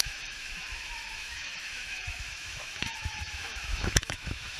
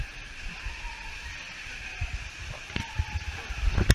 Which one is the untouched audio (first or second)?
second